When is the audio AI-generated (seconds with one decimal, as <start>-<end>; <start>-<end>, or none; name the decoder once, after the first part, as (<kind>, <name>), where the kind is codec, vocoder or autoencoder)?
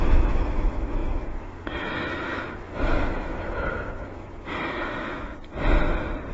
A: 0.0-5.3 (autoencoder, DAC-VAE)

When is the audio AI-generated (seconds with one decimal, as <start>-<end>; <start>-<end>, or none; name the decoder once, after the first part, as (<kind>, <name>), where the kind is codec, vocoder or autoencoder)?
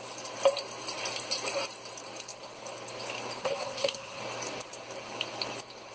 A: 3.4-4.2 (codec, SNAC)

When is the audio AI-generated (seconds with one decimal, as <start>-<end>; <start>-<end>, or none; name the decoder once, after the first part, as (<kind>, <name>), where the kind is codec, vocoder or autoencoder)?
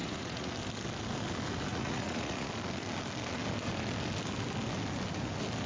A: 0.0-0.5 (vocoder, Vocos); 1.7-2.5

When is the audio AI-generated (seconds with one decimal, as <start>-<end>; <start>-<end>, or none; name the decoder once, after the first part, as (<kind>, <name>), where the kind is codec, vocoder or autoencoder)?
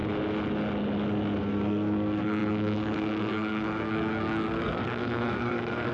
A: 1.4-5.9 (codec, SNAC)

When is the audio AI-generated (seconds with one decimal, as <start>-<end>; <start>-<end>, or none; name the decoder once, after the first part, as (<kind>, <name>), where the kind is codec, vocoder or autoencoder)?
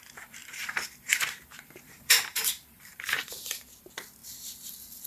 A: 0.4-3.5 (vocoder, BigVGAN v2)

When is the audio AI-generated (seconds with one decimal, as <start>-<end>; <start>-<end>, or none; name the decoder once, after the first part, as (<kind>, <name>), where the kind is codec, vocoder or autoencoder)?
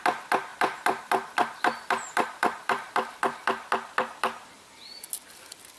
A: 0.5-3.7 (vocoder, BigVGAN v2)